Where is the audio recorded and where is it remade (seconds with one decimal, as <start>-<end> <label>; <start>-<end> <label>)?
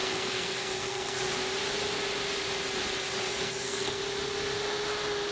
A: 0.0-1.2 remade; 1.2-3.3 recorded; 3.3-4.0 remade; 4.0-5.3 recorded